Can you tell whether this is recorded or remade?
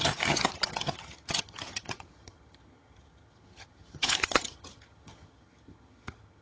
remade